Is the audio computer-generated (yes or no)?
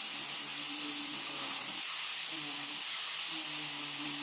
no